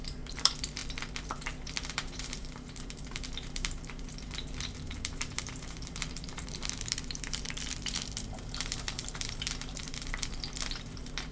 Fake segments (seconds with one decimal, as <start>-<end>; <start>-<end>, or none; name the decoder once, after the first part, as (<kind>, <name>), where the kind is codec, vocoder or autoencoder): 0.0-11.3 (vocoder, BigVGAN v2)

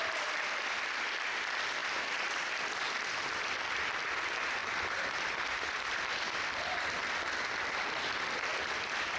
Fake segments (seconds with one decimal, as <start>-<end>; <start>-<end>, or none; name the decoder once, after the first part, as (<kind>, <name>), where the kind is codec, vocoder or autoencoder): 0.0-9.2 (vocoder, BigVGAN v2)

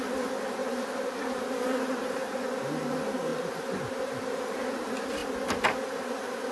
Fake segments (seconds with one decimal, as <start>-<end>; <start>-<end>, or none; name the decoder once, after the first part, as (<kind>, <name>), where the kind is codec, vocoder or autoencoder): 0.6-2.5 (vocoder, BigVGAN v2)

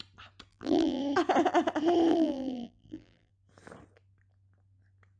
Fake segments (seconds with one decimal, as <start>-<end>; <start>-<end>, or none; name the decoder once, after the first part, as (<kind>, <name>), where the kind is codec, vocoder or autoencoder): 0.5-1.0 (vocoder, BigVGAN v2); 2.1-3.3

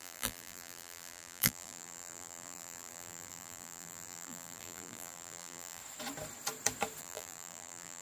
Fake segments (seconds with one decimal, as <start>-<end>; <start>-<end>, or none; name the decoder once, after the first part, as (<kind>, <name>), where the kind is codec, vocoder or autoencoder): 0.0-5.8 (vocoder, BigVGAN v2); 7.0-8.0

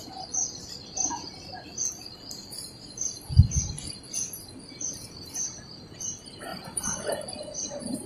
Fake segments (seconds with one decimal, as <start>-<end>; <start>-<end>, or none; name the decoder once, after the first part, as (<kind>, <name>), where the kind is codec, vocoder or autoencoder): 6.5-7.1 (vocoder, BigVGAN v2)